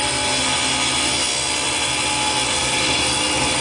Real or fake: real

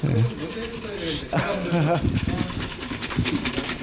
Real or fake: real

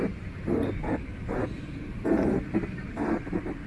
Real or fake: real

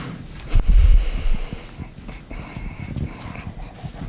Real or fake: real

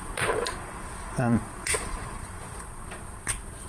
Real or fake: fake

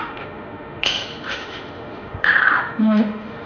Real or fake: fake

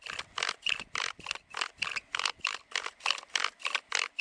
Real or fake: real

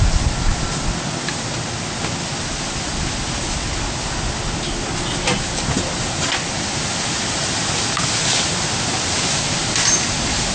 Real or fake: real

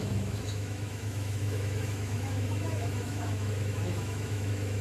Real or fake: fake